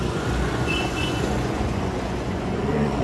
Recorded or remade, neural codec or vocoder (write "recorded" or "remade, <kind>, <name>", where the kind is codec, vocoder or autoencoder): remade, vocoder, Vocos